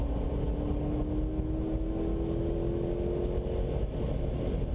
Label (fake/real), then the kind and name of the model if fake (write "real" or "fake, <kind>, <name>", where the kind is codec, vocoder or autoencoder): real